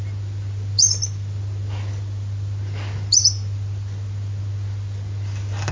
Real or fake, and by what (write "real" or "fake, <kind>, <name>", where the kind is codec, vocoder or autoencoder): real